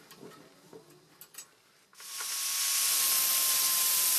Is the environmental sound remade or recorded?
recorded